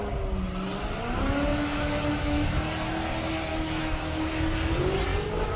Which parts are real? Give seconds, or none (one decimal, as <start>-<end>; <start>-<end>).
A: 0.0-1.5; 2.6-3.5; 4.4-5.6